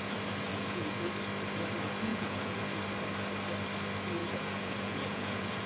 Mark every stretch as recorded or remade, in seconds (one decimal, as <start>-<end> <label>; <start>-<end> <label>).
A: 0.0-0.5 recorded; 0.5-1.1 remade; 1.1-2.1 recorded; 2.1-2.6 remade; 2.6-4.2 recorded; 4.2-5.7 remade